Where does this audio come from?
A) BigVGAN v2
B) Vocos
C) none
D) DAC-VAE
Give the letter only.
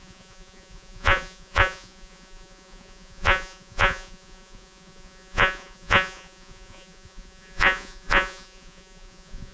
B